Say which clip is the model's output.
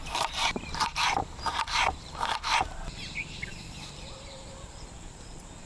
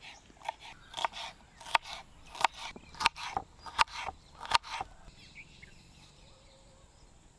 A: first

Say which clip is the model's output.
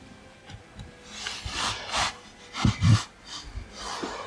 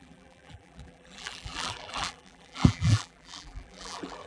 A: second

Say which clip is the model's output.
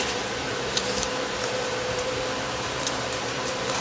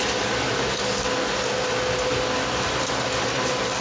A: first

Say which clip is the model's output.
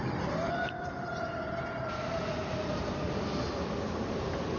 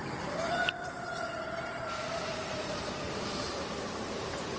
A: second